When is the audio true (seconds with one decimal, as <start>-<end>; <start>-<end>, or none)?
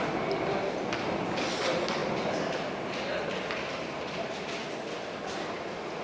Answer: 0.0-6.0